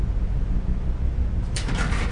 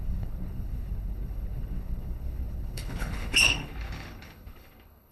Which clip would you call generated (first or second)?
second